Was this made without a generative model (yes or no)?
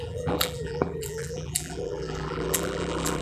no